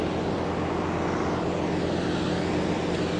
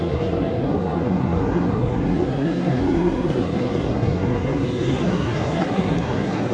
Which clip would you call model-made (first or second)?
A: second